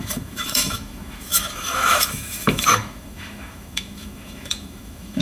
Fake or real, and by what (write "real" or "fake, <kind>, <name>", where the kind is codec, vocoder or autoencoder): fake, autoencoder, DAC-VAE